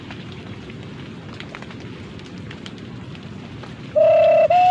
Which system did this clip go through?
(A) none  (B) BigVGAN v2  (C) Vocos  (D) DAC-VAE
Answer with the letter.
A